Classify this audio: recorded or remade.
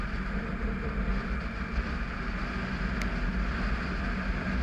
recorded